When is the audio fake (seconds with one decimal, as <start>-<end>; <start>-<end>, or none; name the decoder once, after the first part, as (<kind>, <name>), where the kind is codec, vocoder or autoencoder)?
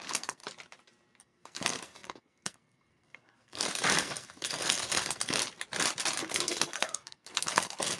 0.0-0.4 (codec, SNAC); 1.2-5.4; 6.2-8.0